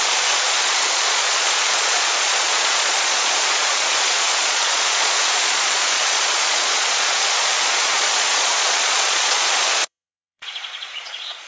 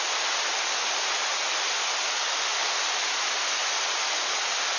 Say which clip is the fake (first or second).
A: first